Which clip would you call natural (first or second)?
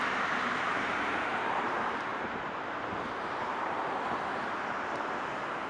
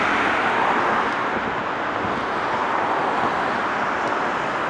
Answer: second